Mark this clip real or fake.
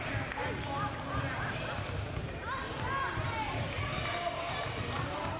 real